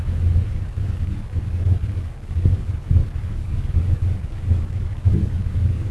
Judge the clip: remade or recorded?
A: remade